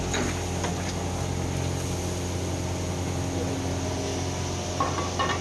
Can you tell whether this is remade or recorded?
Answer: recorded